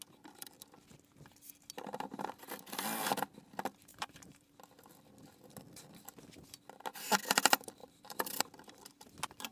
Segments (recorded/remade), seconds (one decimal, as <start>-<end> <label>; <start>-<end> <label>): 0.0-3.9 recorded; 3.9-4.5 remade; 4.5-7.8 recorded; 7.8-8.4 remade; 8.4-9.5 recorded